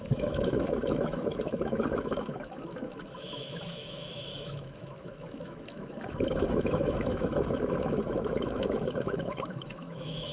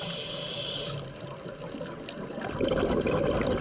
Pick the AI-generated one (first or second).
first